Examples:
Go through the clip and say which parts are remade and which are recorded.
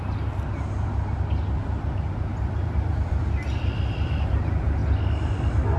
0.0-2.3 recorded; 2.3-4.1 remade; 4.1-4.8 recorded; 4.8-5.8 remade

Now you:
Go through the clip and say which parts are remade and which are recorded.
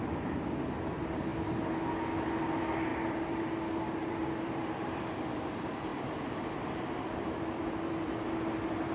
0.0-2.9 recorded; 2.9-5.0 remade; 5.0-5.9 recorded; 5.9-7.9 remade; 7.9-8.9 recorded